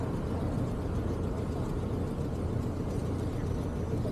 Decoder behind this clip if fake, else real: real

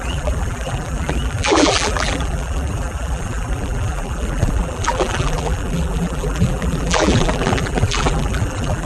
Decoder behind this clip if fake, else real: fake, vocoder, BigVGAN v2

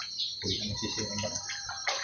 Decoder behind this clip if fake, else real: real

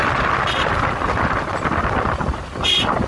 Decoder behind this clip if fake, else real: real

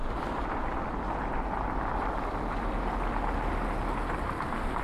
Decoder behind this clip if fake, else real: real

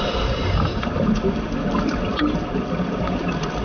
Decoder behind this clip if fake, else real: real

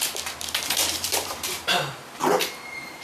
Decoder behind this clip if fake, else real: fake, vocoder, BigVGAN v2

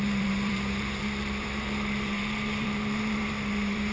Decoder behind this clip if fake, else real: fake, vocoder, BigVGAN v2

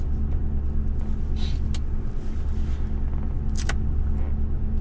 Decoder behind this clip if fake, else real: real